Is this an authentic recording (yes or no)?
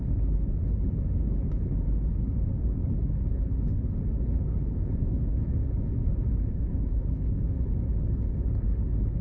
no